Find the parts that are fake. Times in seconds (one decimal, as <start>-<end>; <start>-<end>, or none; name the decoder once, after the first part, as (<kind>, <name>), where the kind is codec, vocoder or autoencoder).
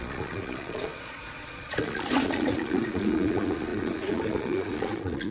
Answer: 0.0-5.3 (vocoder, Vocos)